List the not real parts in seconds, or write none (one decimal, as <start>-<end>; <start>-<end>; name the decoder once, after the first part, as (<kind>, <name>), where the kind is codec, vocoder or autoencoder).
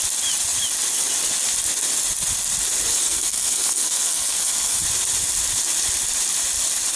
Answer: 2.9-4.8 (codec, SNAC)